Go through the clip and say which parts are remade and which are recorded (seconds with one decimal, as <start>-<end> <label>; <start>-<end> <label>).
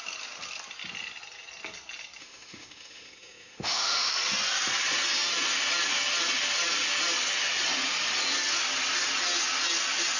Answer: 0.0-2.2 recorded; 2.2-4.1 remade; 4.1-10.2 recorded